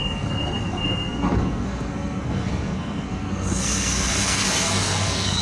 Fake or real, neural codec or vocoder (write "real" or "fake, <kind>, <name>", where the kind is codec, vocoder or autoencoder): fake, codec, SNAC